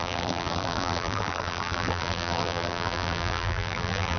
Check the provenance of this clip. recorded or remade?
remade